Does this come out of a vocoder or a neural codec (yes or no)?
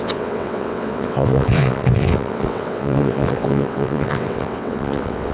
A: yes